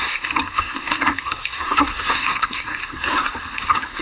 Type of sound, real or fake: fake